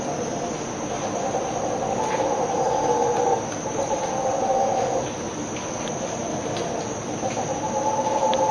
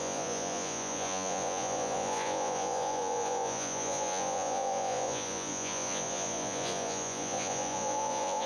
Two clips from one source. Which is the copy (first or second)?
second